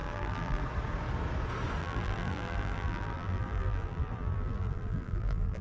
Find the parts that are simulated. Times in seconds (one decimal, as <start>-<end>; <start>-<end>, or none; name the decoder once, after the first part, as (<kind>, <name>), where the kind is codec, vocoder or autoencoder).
0.0-0.6 (vocoder, BigVGAN v2); 1.8-5.6